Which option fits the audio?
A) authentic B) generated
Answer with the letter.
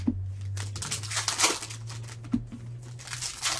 A